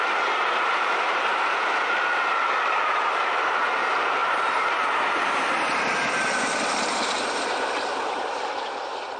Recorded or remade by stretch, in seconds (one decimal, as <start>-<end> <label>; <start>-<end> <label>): 0.0-0.8 recorded; 0.8-9.2 remade